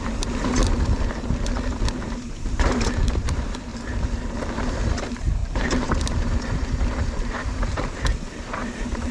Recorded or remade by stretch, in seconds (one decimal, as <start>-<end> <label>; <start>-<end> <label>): 0.0-0.6 remade; 0.6-2.3 recorded; 2.3-3.7 remade; 3.7-4.6 recorded; 4.6-9.1 remade